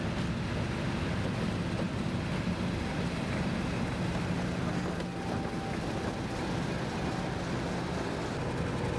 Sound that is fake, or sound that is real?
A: real